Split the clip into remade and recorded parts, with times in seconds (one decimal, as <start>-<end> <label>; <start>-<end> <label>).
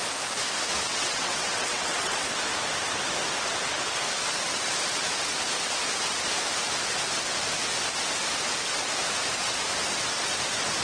0.0-0.9 recorded; 0.9-2.3 remade; 2.3-10.8 recorded